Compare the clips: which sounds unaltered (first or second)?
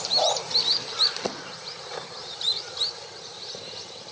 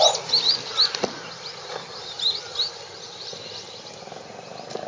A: second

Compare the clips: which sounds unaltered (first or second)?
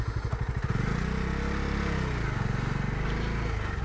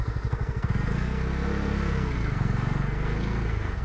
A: first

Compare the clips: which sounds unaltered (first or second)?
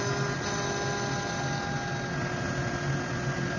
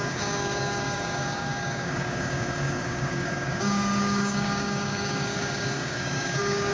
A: first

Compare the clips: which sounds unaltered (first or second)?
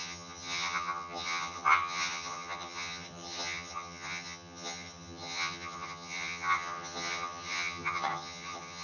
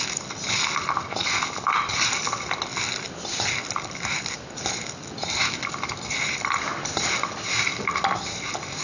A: second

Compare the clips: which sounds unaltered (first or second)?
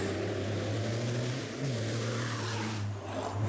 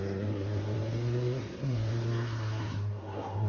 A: first